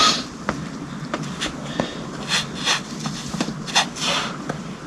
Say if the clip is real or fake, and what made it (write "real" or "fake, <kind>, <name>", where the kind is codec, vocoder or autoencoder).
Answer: real